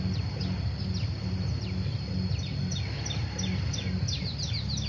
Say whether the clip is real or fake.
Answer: real